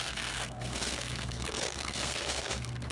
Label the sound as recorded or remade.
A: remade